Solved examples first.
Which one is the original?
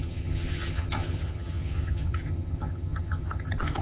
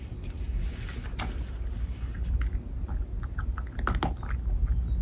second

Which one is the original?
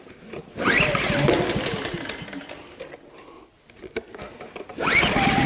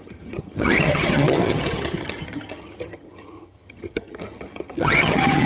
first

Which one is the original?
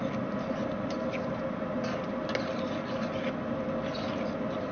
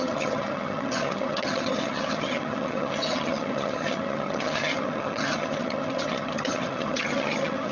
first